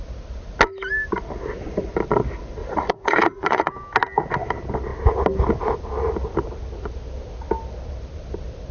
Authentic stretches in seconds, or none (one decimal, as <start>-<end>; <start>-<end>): 0.0-2.6; 3.7-8.7